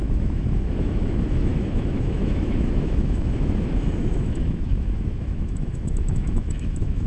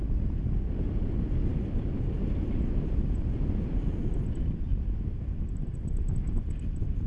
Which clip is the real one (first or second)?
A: second